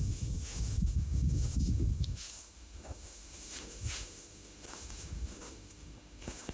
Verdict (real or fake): fake